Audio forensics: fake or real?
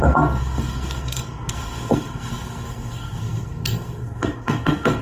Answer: fake